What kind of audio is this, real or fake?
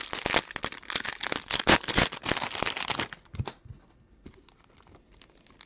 real